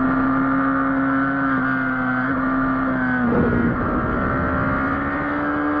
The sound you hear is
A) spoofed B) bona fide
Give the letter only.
B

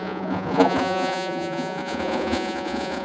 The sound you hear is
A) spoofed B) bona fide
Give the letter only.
A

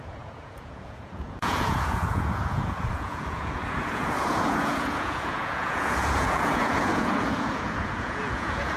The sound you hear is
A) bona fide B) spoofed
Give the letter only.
B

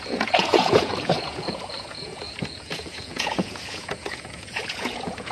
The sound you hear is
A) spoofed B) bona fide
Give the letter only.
A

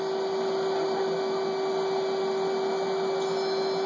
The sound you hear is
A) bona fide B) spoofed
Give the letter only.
A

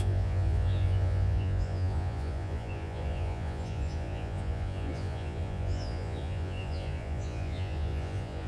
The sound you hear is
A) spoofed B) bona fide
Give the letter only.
A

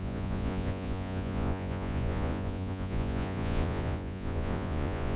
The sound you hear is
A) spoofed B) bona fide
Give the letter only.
A